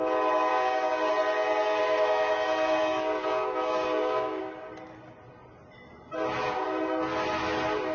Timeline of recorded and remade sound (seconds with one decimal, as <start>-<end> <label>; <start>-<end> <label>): 0.0-0.5 recorded; 0.5-1.1 remade; 1.1-1.8 recorded; 1.8-4.4 remade; 4.4-7.9 recorded